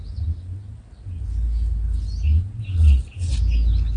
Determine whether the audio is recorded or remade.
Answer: recorded